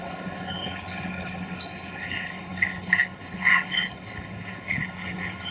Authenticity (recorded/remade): remade